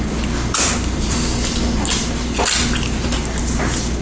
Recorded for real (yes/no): yes